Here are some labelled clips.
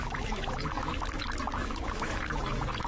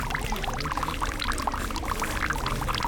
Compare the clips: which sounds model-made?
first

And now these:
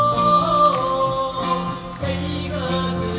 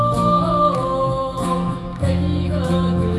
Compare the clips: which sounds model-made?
second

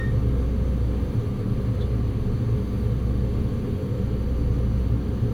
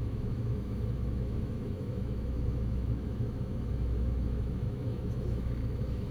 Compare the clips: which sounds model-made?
second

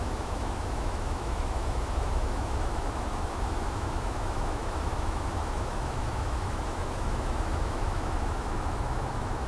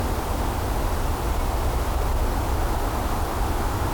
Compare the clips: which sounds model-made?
first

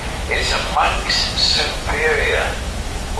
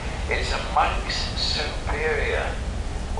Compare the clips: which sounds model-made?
first